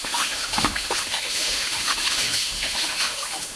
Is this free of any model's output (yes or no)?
no